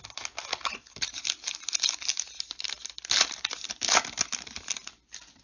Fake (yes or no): yes